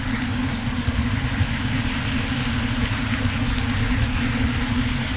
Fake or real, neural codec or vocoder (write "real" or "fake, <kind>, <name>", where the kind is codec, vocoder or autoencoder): real